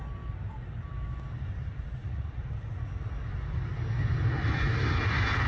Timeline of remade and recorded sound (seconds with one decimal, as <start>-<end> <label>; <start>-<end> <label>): 0.0-2.0 recorded; 2.0-2.7 remade; 2.7-5.5 recorded